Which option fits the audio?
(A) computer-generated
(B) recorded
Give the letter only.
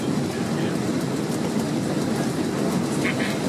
B